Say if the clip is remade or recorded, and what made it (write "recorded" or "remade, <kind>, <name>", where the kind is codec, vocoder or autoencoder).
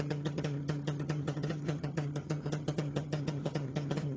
remade, vocoder, HiFi-GAN